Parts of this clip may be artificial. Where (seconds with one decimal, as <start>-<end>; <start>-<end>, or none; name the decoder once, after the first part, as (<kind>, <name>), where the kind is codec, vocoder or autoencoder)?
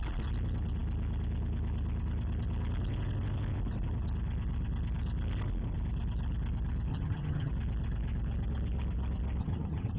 6.9-7.5 (vocoder, HiFi-GAN); 9.4-10.0